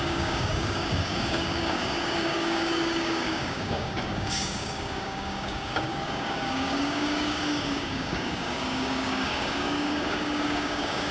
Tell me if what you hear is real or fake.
fake